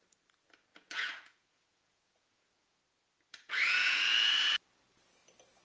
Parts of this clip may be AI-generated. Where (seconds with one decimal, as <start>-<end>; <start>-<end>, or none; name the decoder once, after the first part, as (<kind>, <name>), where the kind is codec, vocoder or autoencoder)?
0.7-2.8 (vocoder, Vocos); 3.3-4.3